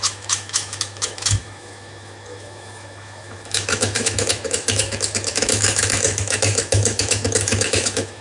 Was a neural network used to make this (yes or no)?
yes